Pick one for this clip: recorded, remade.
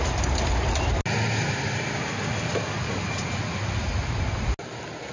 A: recorded